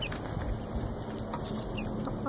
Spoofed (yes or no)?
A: no